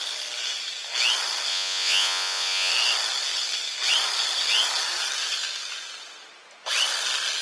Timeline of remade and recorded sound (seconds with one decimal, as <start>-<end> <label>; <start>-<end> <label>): 0.0-1.5 recorded; 1.5-2.7 remade; 2.7-7.4 recorded

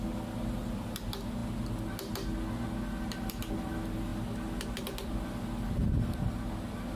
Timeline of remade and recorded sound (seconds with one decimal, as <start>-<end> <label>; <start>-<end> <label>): 0.0-1.4 remade; 1.4-3.5 recorded; 3.5-4.1 remade; 4.1-4.8 recorded; 4.8-5.8 remade; 5.8-7.0 recorded

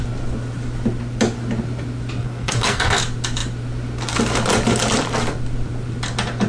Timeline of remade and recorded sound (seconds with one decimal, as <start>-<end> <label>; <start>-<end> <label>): 0.0-2.2 recorded; 2.2-3.0 remade; 3.0-6.5 recorded

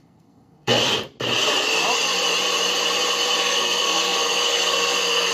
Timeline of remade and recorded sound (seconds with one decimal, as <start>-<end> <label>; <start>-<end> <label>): 0.0-0.8 remade; 0.8-3.4 recorded; 3.4-5.3 remade

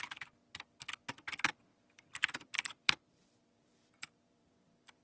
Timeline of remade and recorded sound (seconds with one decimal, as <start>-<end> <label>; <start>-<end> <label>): 0.0-1.7 recorded; 1.7-5.0 remade

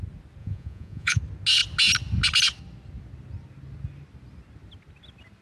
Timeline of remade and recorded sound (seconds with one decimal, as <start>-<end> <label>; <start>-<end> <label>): 0.0-0.4 recorded; 0.4-1.2 remade; 1.2-5.4 recorded